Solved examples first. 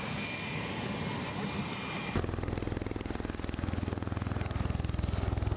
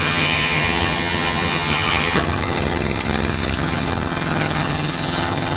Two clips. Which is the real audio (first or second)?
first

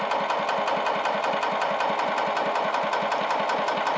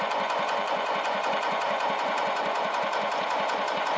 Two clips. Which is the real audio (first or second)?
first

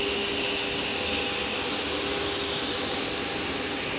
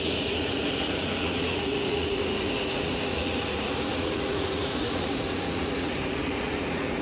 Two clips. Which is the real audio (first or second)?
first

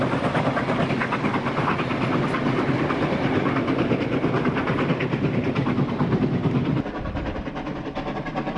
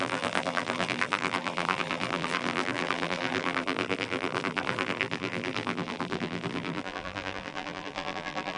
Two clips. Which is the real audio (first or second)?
first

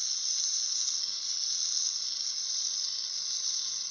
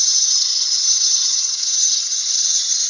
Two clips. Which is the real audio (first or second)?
first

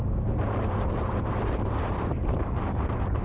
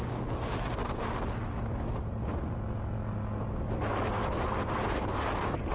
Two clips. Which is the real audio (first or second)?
second